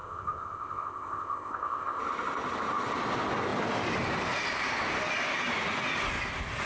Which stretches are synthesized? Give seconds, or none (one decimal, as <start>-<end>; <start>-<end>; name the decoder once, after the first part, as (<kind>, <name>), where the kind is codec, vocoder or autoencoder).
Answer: 0.0-2.0 (codec, ZipCodec)